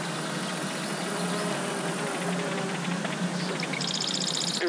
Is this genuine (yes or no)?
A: yes